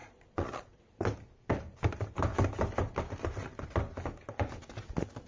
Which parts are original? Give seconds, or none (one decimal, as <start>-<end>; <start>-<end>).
0.8-5.3